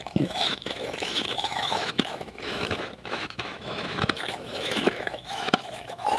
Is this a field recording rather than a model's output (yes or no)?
no